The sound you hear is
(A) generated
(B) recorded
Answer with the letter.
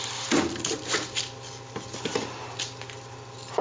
B